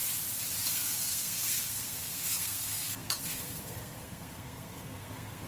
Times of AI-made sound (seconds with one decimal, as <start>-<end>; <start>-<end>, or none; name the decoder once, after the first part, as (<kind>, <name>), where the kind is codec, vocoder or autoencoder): 0.7-5.5 (codec, SNAC)